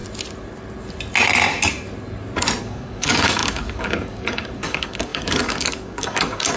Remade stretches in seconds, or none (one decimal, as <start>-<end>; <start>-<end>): 2.6-6.6